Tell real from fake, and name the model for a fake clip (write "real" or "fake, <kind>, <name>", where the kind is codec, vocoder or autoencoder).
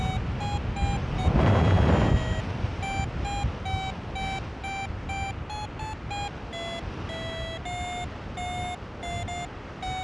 real